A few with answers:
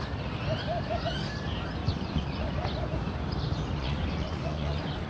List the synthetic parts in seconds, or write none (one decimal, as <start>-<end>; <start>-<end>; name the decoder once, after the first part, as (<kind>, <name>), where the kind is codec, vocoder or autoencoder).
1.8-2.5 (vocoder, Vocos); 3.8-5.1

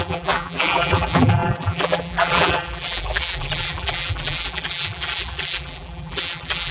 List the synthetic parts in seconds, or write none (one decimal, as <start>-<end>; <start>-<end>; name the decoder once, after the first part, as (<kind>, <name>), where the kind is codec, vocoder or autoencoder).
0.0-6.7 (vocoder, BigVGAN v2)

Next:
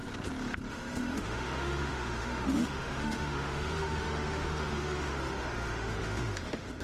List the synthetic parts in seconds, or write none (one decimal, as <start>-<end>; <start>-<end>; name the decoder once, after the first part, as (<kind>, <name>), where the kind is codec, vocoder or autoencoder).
0.7-6.8 (autoencoder, DAC-VAE)

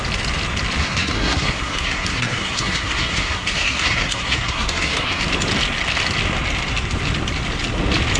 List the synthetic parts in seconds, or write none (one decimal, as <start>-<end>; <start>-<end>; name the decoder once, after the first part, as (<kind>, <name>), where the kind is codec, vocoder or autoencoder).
0.8-5.2 (codec, SNAC)